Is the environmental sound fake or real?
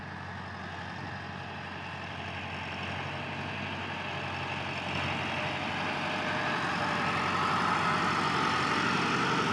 real